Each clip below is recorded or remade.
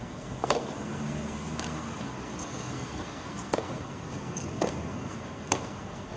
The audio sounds remade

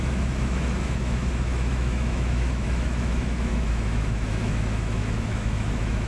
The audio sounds remade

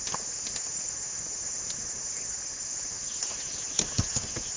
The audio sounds recorded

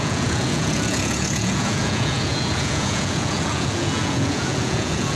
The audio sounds remade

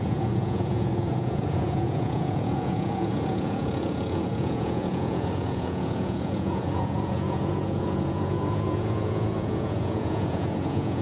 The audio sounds remade